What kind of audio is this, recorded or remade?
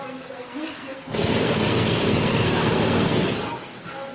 remade